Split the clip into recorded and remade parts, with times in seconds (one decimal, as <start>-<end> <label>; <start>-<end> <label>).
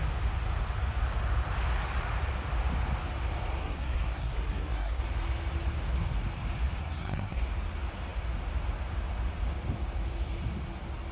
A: 0.0-3.6 recorded; 3.6-5.0 remade; 5.0-6.8 recorded; 6.8-7.4 remade; 7.4-11.1 recorded